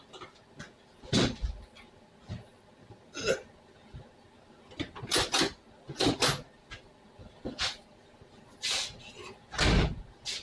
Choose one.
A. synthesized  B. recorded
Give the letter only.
B